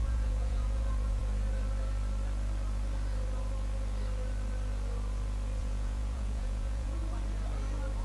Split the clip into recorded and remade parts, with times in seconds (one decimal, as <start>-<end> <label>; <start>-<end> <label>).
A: 0.0-1.2 remade; 1.2-5.6 recorded; 5.6-7.0 remade; 7.0-8.0 recorded